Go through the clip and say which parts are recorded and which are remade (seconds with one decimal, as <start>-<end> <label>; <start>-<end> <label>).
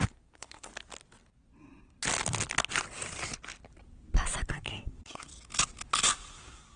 0.0-0.7 remade; 0.7-4.5 recorded; 4.5-5.3 remade; 5.3-6.3 recorded; 6.3-6.8 remade